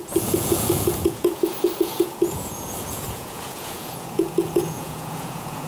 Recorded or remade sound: remade